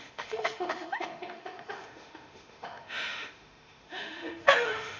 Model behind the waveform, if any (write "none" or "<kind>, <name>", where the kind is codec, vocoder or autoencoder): autoencoder, DAC-VAE